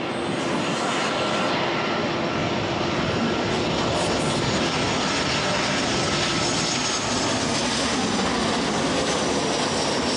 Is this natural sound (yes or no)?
yes